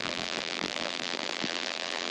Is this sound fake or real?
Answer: fake